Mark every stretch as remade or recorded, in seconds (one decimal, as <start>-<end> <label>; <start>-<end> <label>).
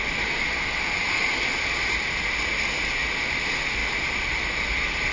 0.0-5.1 recorded